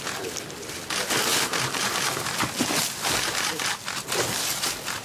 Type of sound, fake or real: real